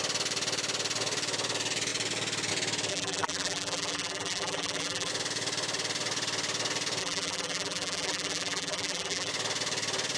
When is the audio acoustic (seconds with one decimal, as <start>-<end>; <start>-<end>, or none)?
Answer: 0.0-2.9; 5.1-7.0; 9.3-10.2